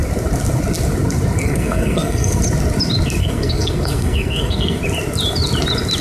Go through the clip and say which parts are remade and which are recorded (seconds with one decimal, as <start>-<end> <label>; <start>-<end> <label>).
0.0-1.4 recorded; 1.4-2.4 remade; 2.4-3.2 recorded; 3.2-4.8 remade; 4.8-6.0 recorded